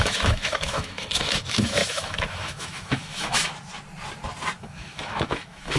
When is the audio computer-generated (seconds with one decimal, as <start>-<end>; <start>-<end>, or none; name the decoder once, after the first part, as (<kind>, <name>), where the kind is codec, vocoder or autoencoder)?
0.0-3.5 (autoencoder, DAC-VAE); 4.6-5.8